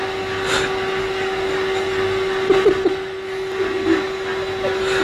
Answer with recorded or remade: recorded